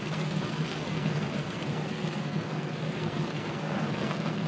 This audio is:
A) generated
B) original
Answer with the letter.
A